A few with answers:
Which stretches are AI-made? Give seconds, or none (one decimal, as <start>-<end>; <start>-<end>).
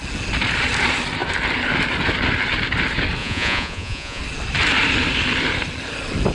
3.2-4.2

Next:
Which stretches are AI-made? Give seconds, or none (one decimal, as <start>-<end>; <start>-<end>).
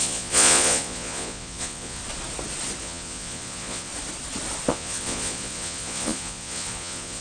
0.0-2.0; 2.8-3.9; 4.7-7.2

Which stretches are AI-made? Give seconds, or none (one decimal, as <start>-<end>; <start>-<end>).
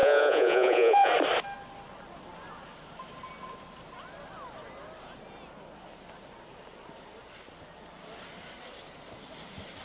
0.0-1.1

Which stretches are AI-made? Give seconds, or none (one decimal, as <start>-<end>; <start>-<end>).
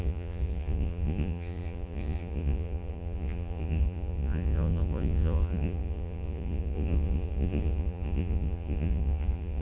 0.0-9.6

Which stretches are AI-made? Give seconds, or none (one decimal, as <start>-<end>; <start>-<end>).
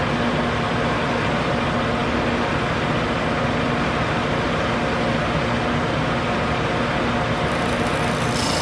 none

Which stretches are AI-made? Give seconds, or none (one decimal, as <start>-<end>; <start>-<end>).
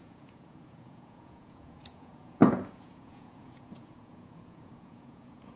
0.0-5.6